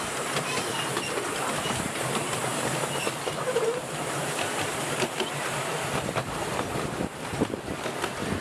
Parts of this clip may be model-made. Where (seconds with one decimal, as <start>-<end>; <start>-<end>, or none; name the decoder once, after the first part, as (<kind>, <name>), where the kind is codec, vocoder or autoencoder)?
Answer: none